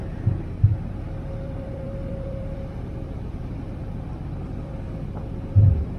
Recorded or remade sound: remade